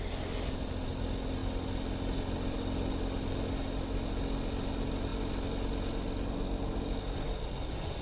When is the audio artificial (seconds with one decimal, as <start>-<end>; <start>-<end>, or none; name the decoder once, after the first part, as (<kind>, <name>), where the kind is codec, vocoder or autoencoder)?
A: none